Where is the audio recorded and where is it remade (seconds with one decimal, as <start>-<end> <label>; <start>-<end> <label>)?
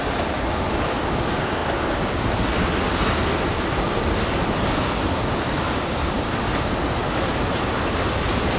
0.0-8.6 recorded